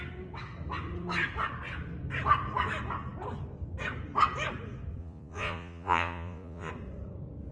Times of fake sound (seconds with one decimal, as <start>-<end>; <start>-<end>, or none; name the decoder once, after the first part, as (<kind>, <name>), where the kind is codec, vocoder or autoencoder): 5.0-6.7 (vocoder, Vocos)